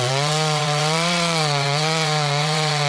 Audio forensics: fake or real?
fake